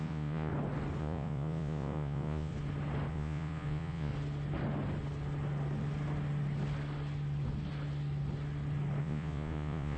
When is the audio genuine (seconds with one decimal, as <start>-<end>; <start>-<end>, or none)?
0.5-1.0; 2.5-3.1; 4.1-9.0